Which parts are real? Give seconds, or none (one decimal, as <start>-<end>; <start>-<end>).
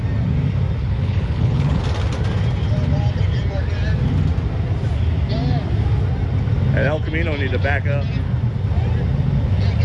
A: 0.0-0.8; 1.8-9.8